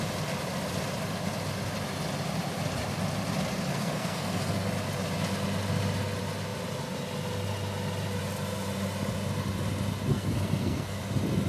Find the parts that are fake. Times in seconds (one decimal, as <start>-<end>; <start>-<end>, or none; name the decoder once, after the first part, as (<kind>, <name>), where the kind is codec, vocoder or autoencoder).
3.7-4.7 (codec, SNAC); 10.1-11.0